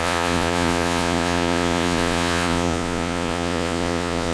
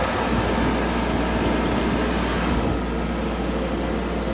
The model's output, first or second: first